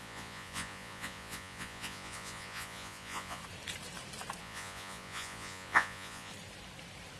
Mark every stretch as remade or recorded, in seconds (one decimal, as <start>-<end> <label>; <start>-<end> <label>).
0.0-3.4 remade; 3.4-4.4 recorded; 4.4-6.3 remade; 6.3-7.2 recorded